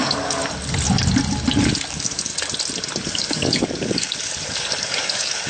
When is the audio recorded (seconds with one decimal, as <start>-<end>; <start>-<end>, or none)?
0.4-1.9; 2.3-3.0